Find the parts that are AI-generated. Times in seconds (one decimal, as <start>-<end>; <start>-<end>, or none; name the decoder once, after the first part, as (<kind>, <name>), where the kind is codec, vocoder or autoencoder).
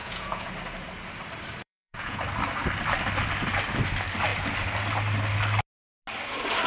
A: 0.0-0.5 (vocoder, Vocos); 1.6-2.2